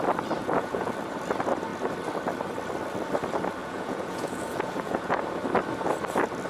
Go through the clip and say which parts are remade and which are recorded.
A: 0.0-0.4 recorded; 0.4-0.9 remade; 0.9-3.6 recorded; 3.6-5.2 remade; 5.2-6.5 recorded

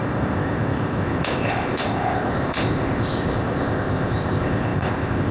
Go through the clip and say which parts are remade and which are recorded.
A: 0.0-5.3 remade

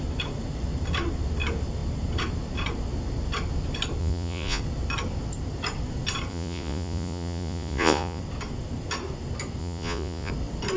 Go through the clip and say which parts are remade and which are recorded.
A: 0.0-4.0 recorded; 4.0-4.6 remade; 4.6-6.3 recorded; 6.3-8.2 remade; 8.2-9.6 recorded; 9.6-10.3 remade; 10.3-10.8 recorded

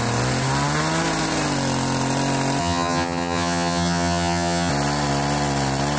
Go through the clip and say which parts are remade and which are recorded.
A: 0.0-2.6 recorded; 2.6-4.7 remade; 4.7-6.0 recorded